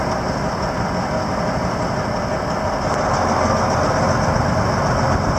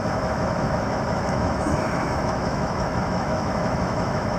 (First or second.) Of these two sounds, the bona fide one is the first